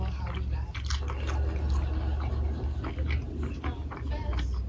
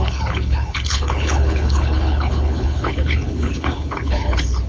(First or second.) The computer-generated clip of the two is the second